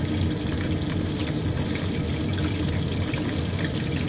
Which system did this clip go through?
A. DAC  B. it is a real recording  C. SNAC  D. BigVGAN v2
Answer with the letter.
B